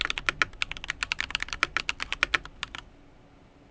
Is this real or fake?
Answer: real